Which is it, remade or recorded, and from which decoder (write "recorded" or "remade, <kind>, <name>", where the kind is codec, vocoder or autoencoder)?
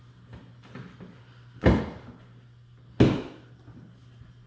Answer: recorded